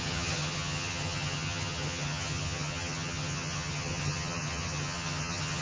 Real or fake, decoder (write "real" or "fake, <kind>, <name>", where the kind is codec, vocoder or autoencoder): fake, vocoder, HiFi-GAN